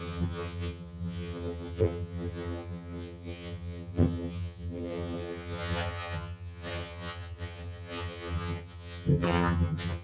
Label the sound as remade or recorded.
remade